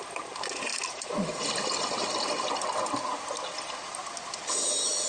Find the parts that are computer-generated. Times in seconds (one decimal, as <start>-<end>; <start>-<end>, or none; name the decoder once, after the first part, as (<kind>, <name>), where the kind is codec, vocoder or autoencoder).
none